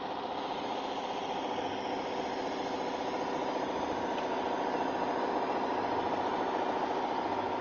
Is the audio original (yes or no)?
yes